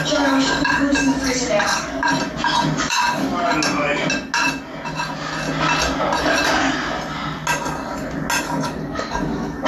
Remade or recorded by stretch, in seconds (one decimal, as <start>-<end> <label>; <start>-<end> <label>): 0.0-2.1 remade; 2.1-2.8 recorded; 2.8-3.3 remade; 3.3-8.4 recorded; 8.4-9.7 remade